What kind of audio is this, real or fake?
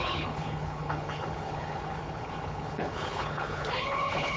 fake